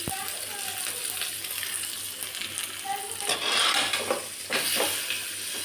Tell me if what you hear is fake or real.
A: real